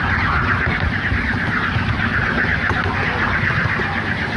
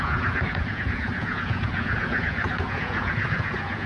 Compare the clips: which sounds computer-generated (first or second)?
second